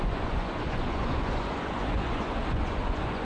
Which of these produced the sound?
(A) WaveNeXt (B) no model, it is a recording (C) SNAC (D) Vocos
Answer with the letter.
D